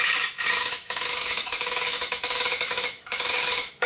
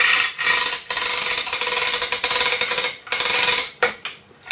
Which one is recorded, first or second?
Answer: second